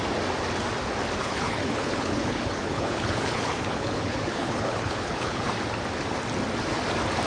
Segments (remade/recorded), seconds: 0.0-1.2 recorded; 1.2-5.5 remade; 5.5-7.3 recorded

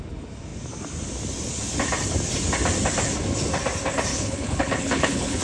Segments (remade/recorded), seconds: 0.0-4.1 recorded; 4.1-5.4 remade